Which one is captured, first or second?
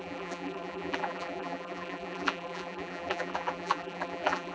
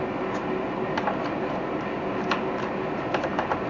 second